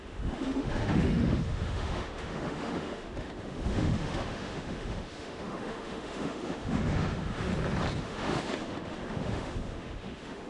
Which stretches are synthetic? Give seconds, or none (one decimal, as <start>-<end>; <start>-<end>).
0.0-7.5; 8.0-10.5